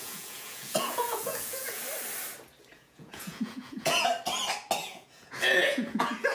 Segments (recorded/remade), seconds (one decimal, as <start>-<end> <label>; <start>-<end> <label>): 0.0-1.8 remade; 1.8-2.7 recorded; 2.7-4.1 remade; 4.1-4.8 recorded; 4.8-6.3 remade